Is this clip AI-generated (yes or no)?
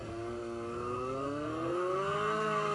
yes